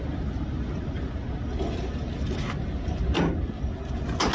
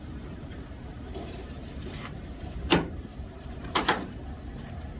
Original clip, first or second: first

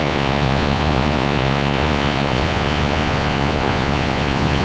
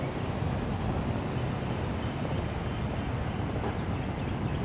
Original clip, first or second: second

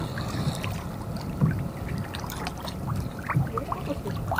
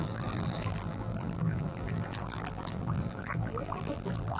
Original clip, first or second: first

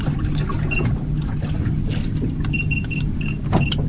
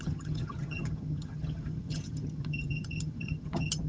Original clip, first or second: first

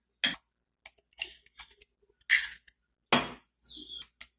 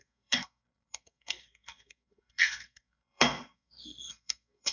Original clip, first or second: first